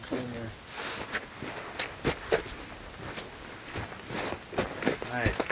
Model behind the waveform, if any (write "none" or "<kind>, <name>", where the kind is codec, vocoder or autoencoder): none